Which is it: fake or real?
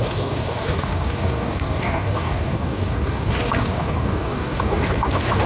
fake